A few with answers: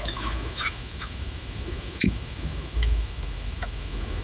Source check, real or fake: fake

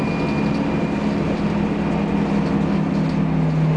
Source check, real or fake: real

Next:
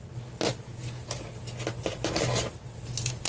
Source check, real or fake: real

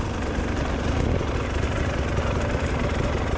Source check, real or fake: real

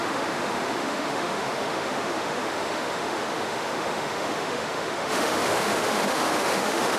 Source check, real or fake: fake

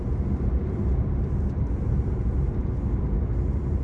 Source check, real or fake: real